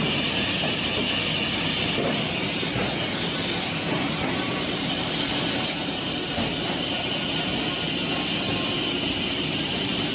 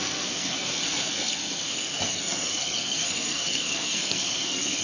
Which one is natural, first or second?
first